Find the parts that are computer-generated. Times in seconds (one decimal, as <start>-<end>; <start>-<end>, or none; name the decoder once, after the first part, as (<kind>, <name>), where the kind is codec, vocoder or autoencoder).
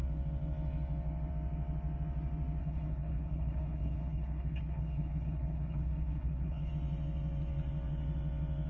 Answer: 2.6-6.7 (codec, HILCodec)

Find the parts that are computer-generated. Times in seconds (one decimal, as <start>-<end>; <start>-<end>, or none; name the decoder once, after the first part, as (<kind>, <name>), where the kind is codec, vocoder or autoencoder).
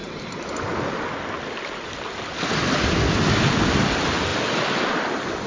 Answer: none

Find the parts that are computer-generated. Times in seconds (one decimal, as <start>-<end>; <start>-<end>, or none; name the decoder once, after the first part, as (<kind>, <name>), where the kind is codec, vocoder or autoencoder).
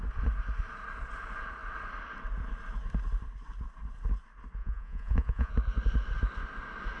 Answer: 4.6-5.5 (vocoder, Vocos)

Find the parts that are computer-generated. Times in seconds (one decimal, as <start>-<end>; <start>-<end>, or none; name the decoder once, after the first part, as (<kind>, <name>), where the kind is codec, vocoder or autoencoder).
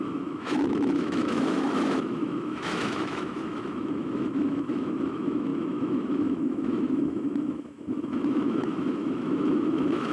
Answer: 0.0-10.1 (autoencoder, DAC-VAE)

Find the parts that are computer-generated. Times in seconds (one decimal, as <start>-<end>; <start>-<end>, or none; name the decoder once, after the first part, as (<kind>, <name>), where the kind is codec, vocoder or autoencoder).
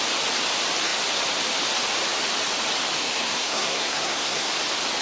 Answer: 3.0-4.5 (codec, SNAC)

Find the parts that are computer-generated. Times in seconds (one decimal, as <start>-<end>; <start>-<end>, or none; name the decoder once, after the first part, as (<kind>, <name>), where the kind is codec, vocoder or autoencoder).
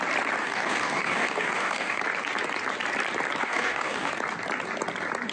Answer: 0.4-2.0 (codec, DAC); 3.4-4.1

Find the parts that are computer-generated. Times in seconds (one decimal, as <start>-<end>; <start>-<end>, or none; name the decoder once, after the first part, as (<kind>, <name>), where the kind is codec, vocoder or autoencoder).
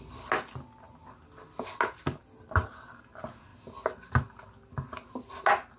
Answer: none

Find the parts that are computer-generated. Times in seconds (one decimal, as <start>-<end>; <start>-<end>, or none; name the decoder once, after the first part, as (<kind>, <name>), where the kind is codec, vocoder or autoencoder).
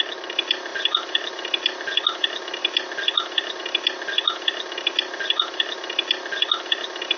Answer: none